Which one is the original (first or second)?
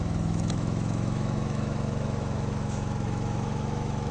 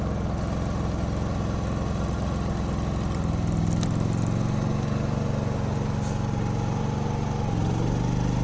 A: second